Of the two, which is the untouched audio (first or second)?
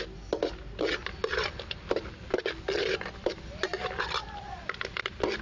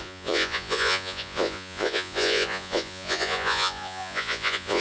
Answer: first